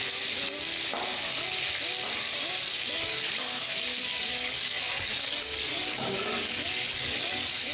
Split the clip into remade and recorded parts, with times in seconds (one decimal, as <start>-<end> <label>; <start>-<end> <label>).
0.0-2.9 recorded; 2.9-7.7 remade